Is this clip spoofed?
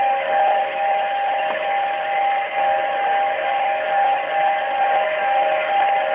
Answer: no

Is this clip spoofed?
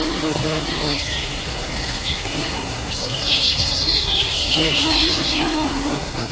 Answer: yes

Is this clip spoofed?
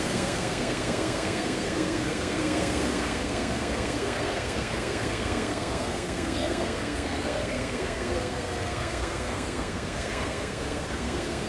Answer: yes